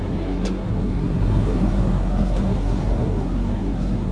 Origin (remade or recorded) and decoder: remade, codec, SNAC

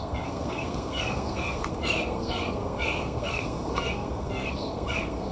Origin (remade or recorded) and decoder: remade, codec, SNAC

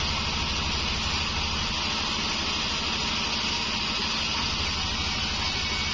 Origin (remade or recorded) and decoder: recorded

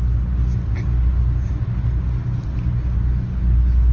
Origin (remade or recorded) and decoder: recorded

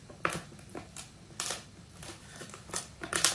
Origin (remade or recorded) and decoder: recorded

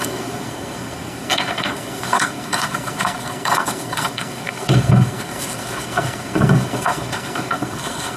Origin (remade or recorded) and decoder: remade, codec, SNAC